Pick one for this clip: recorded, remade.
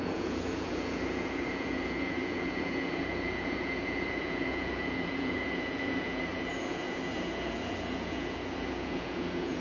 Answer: remade